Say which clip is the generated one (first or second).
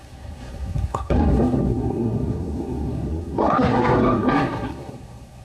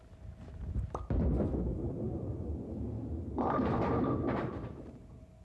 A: first